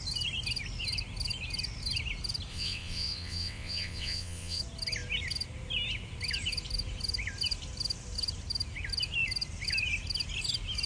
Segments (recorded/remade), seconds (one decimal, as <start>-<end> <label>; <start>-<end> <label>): 0.0-2.5 recorded; 2.5-4.6 remade; 4.6-10.9 recorded